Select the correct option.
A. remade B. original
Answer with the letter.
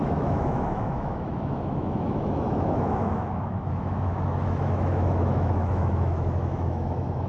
A